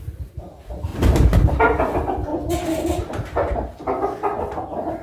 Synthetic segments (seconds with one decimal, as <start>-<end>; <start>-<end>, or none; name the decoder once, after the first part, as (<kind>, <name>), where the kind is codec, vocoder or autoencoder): 0.9-1.5 (vocoder, BigVGAN v2)